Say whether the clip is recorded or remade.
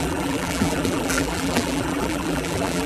remade